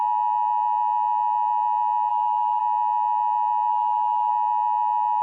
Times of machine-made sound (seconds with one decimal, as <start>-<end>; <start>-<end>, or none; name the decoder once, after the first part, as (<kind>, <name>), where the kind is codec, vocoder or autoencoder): 2.1-2.6 (autoencoder, DAC-VAE); 3.7-4.3